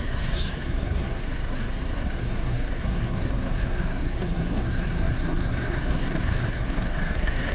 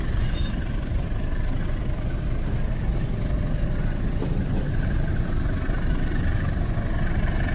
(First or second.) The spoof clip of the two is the first